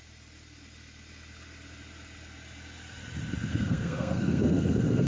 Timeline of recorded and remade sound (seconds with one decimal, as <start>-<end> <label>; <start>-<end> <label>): 0.0-3.5 recorded; 3.5-5.1 remade